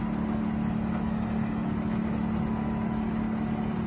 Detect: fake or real real